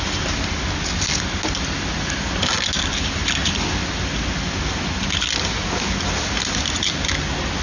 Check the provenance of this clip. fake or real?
real